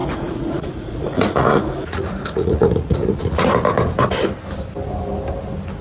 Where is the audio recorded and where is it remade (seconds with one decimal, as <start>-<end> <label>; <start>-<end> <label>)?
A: 0.0-3.5 remade; 3.5-5.8 recorded